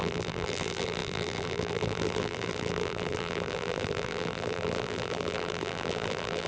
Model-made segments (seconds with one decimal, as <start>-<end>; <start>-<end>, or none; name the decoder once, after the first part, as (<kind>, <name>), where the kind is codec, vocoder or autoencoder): 0.0-6.5 (vocoder, BigVGAN v2)